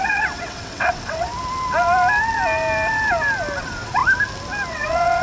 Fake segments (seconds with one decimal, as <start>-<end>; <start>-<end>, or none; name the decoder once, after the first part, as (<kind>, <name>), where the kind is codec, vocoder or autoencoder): 0.0-1.3 (vocoder, WaveNeXt); 3.6-4.0; 4.7-5.2